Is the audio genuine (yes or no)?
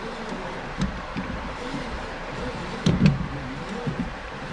no